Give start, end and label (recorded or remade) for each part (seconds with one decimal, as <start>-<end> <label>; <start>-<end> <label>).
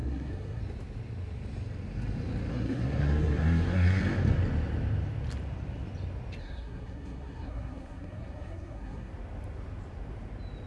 0.0-0.6 remade; 0.6-2.5 recorded; 2.5-4.0 remade; 4.0-6.4 recorded; 6.4-9.1 remade; 9.1-10.7 recorded